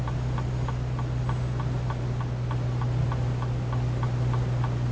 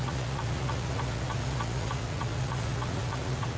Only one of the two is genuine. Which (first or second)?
first